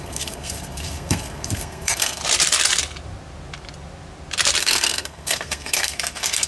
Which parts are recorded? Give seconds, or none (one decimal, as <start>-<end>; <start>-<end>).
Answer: 2.2-4.6